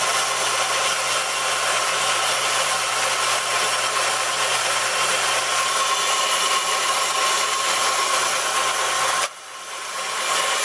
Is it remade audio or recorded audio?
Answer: recorded